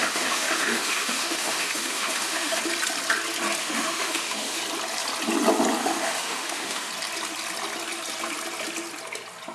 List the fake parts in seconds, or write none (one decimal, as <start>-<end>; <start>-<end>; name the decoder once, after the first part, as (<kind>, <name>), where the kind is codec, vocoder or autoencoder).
0.0-2.6 (autoencoder, DAC-VAE); 3.6-4.6; 5.8-6.9